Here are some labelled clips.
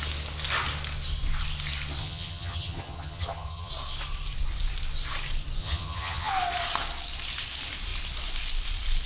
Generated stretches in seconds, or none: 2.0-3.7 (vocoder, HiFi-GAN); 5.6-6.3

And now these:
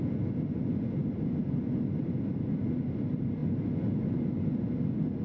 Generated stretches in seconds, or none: none

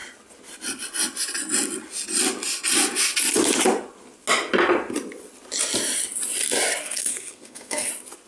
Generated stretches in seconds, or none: 6.8-7.9 (codec, SNAC)

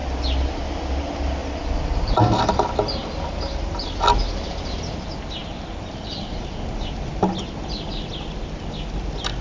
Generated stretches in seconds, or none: 1.4-2.1 (vocoder, BigVGAN v2)

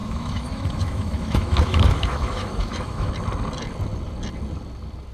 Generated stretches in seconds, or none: 0.0-3.1 (autoencoder, DAC-VAE)

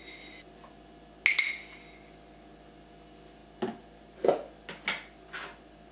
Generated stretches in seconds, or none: none